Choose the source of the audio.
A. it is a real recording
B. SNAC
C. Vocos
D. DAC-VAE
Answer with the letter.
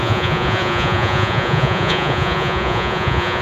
C